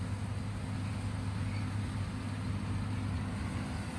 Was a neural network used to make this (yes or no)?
no